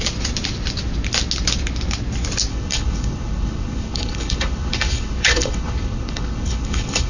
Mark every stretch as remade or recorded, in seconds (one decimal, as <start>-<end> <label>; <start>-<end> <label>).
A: 0.0-2.5 recorded; 2.5-7.1 remade